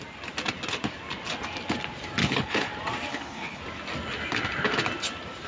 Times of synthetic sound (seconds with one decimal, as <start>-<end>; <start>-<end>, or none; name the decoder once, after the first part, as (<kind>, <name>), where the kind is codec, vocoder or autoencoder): 2.2-2.7 (codec, HILCodec); 3.1-3.6